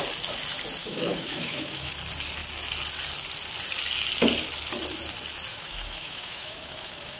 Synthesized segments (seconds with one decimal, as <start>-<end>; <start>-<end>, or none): 0.8-1.9; 5.5-7.2